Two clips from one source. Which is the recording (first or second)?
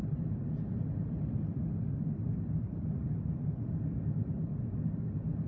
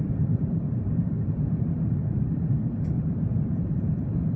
first